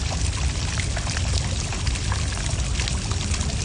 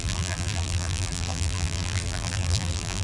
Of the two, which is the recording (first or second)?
first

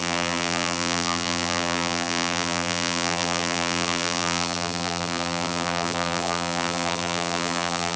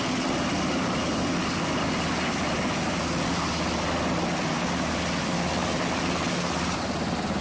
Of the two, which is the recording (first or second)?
second